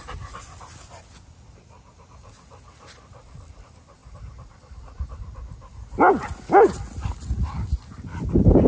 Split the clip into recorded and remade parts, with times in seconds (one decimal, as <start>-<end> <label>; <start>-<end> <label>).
0.0-8.7 recorded